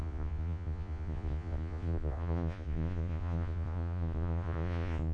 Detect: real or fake fake